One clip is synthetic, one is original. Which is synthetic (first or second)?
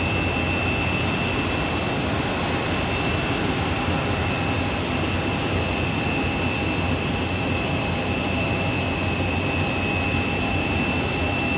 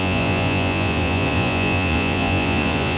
second